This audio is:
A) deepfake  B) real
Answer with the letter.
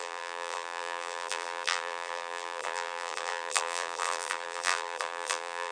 A